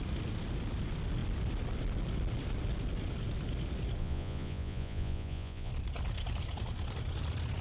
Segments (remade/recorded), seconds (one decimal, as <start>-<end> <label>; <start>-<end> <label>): 0.0-4.0 recorded; 4.0-5.7 remade; 5.7-7.6 recorded